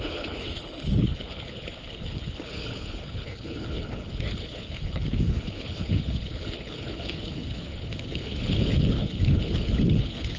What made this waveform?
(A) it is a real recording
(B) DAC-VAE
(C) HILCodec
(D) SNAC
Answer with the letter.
C